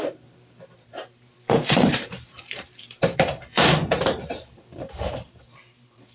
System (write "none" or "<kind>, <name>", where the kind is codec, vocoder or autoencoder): vocoder, BigVGAN v2